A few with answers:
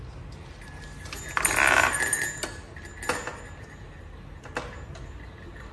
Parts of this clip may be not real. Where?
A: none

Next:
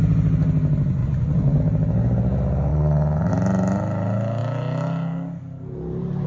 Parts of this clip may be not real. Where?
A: 1.0-1.6 (vocoder, Vocos); 2.7-3.3

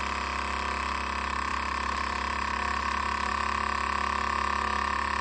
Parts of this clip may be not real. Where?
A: 1.5-3.3 (vocoder, BigVGAN v2)